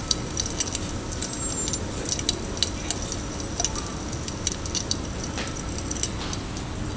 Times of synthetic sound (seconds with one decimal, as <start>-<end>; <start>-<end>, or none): none